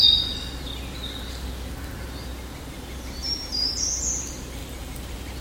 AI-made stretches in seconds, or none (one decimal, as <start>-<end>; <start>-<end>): 3.2-4.0; 4.6-5.4